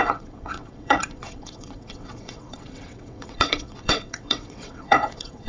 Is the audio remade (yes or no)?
yes